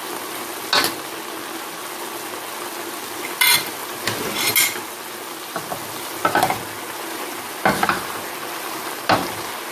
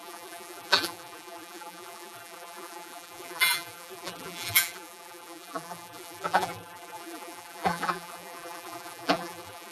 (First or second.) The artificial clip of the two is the second